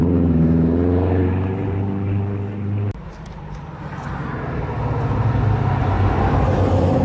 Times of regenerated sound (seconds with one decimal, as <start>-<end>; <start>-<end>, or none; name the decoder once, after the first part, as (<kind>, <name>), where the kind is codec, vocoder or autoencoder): 0.0-3.9 (vocoder, BigVGAN v2)